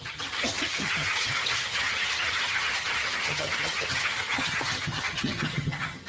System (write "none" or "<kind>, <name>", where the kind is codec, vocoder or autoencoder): vocoder, HiFi-GAN